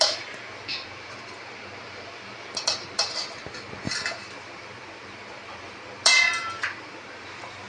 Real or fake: fake